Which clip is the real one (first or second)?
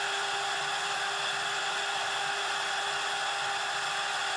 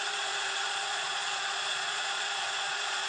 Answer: first